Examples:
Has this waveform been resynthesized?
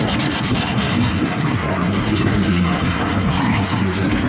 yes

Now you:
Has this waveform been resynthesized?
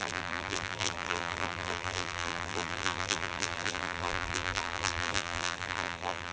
yes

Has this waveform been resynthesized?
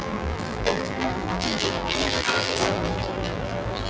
yes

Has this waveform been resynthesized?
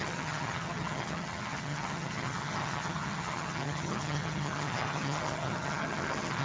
yes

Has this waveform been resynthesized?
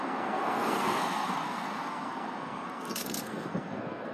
yes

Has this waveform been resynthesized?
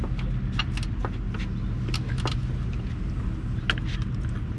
no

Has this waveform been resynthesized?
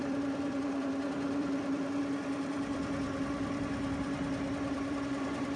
yes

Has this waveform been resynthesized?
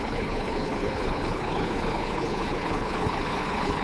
yes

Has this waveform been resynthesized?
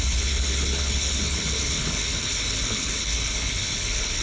yes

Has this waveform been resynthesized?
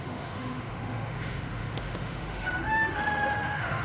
yes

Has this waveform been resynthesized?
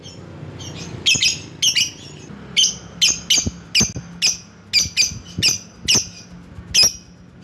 no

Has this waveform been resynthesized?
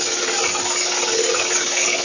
yes